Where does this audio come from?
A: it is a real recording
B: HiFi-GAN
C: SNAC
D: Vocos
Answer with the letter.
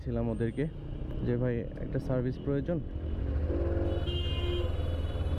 A